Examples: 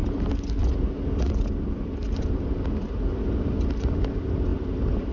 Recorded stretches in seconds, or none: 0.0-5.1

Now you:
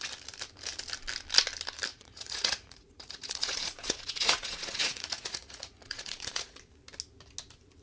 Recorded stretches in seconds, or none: 0.0-1.9; 6.6-7.8

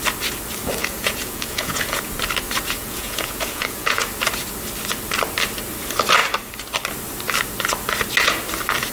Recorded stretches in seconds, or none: 0.0-0.8; 2.1-2.8; 4.0-8.9

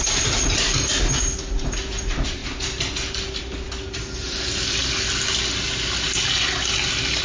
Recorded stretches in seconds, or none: 0.0-7.2

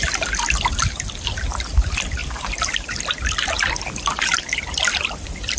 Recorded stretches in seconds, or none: 0.0-5.6